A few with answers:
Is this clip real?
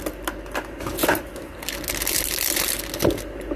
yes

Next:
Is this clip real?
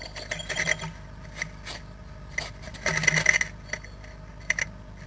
yes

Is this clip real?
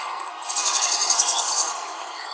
no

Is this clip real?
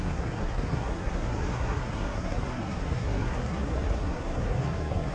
no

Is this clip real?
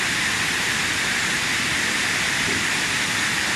yes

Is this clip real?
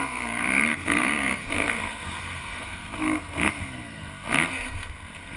no